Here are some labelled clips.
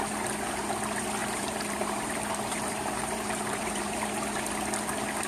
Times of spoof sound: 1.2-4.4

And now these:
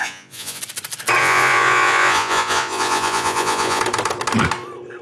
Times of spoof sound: 0.0-0.6; 1.2-3.8

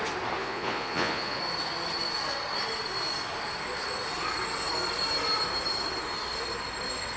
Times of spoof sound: 0.4-1.4